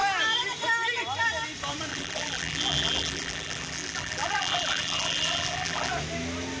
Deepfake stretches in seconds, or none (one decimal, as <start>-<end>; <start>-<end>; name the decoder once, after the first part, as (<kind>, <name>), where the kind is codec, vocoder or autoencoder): 1.9-5.9 (vocoder, BigVGAN v2)